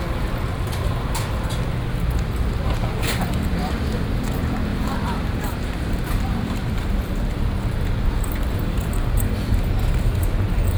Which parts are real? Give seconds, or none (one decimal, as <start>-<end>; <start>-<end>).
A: 0.0-4.7; 6.9-10.8